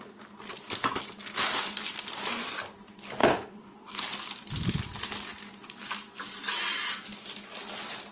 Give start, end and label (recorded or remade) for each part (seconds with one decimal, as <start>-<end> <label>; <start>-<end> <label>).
0.0-3.2 recorded; 3.2-4.0 remade; 4.0-8.1 recorded